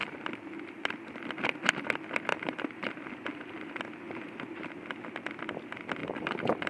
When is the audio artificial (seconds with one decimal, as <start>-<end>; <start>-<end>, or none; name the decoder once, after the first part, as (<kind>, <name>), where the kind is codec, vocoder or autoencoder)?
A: 2.3-2.9 (vocoder, BigVGAN v2); 3.3-3.8; 6.0-6.7